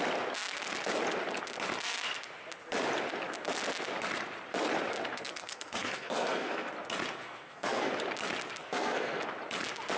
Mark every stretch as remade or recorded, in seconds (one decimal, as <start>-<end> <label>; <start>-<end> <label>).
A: 0.0-5.0 recorded; 5.0-6.7 remade; 6.7-7.2 recorded; 7.2-7.9 remade; 7.9-8.6 recorded; 8.6-9.2 remade; 9.2-10.0 recorded